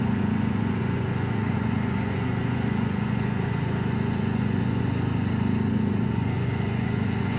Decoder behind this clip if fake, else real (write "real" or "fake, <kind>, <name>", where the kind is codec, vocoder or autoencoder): fake, vocoder, Vocos